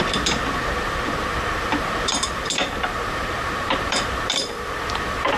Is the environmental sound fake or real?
fake